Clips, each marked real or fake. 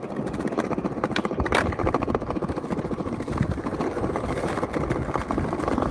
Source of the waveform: real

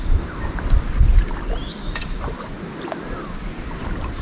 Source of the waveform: real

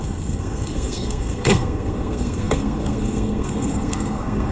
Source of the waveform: fake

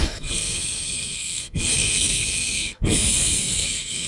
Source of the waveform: fake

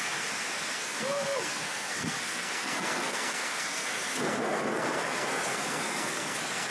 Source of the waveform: fake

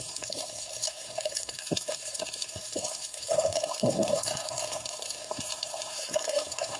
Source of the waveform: fake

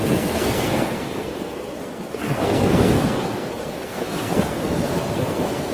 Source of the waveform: fake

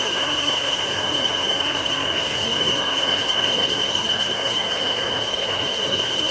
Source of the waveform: fake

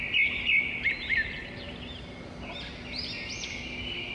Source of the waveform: real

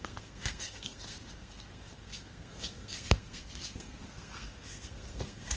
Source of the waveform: fake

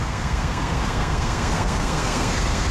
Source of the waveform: fake